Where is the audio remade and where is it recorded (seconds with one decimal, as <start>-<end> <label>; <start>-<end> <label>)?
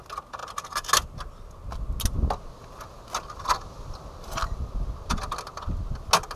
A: 0.0-6.4 recorded